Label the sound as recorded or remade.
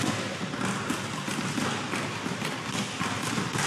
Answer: recorded